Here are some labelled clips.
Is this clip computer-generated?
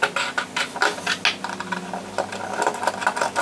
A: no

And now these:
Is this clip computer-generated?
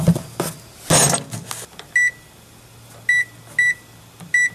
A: no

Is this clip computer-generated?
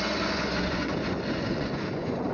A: yes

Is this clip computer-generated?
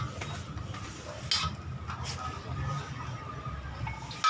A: no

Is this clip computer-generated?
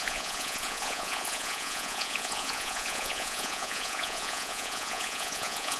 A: yes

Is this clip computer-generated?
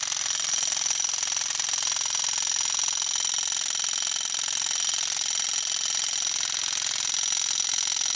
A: no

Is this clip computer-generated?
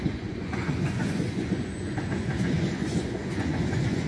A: yes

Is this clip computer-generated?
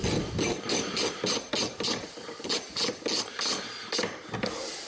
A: no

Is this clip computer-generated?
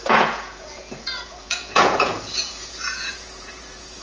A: yes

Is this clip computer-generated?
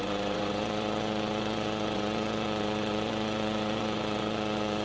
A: yes